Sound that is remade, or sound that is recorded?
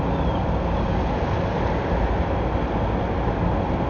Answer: recorded